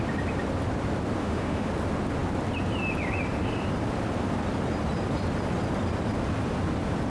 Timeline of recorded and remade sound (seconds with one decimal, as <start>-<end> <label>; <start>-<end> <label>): 0.0-1.2 recorded; 1.2-1.7 remade; 1.7-7.1 recorded